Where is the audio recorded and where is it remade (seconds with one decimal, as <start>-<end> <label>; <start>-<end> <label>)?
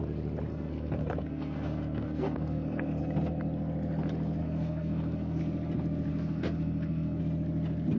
0.0-0.5 recorded; 0.5-3.0 remade; 3.0-4.4 recorded; 4.4-5.4 remade; 5.4-6.1 recorded; 6.1-7.2 remade; 7.2-8.0 recorded